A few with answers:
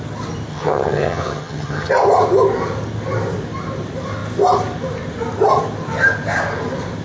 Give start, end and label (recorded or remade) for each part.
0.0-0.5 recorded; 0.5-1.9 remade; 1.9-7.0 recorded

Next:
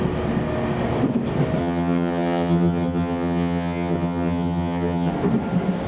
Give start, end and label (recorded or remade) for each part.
0.0-1.6 recorded; 1.6-5.1 remade; 5.1-5.9 recorded